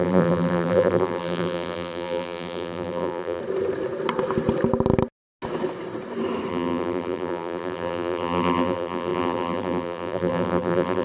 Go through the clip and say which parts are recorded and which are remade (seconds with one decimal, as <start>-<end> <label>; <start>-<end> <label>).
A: 0.0-3.4 remade; 3.4-6.5 recorded; 6.5-11.0 remade